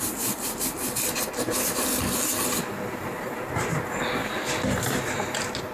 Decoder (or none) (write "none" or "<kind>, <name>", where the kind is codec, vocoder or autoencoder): none